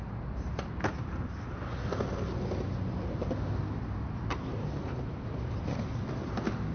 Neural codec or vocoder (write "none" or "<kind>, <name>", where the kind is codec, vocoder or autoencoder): none